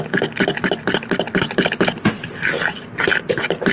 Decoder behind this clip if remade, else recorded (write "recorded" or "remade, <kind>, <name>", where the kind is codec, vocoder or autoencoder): recorded